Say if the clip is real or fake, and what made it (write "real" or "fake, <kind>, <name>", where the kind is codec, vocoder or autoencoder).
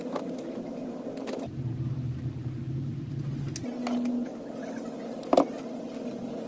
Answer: real